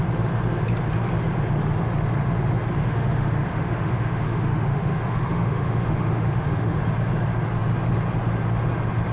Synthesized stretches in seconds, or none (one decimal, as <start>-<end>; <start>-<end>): 2.8-6.8